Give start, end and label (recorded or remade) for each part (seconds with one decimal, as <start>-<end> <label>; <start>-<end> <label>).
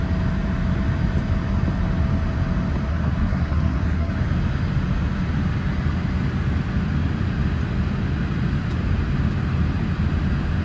0.0-2.9 recorded; 2.9-4.1 remade; 4.1-10.6 recorded